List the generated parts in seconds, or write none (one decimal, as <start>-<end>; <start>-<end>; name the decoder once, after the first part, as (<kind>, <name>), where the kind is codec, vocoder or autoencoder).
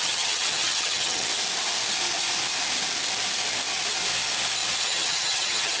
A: 0.0-1.3 (vocoder, HiFi-GAN); 4.8-5.8